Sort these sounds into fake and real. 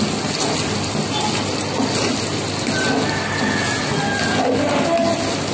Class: real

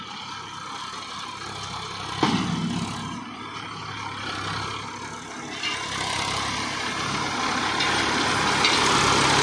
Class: real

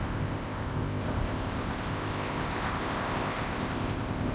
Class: fake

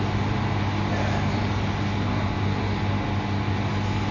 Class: real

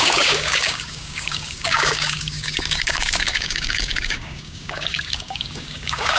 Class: fake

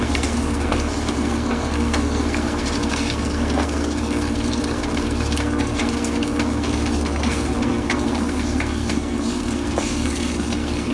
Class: fake